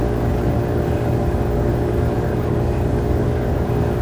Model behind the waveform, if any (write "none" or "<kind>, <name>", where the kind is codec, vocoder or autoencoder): codec, DAC